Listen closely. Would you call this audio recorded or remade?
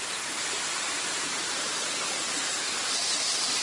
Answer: remade